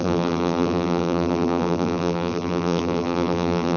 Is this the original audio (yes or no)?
no